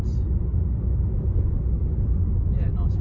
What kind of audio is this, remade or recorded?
recorded